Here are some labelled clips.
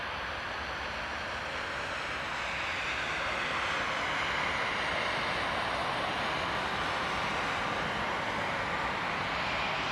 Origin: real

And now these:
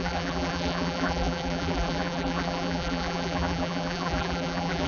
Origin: fake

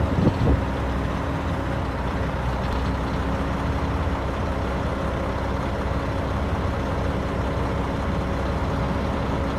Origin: real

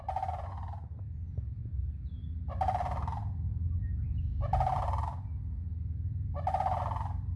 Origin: fake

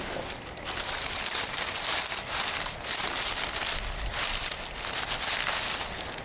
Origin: real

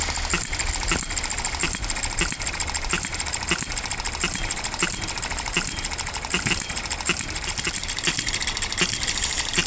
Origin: real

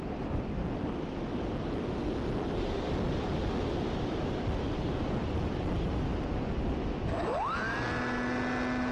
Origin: real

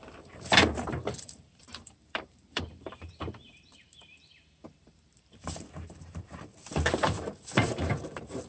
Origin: fake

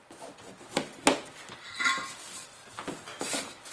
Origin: fake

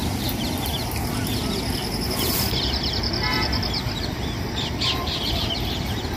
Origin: real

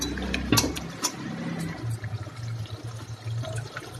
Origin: real